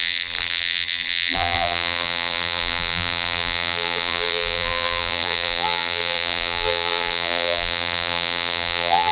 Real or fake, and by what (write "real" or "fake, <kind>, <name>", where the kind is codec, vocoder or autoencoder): fake, vocoder, BigVGAN v2